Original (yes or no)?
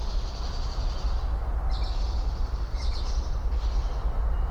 yes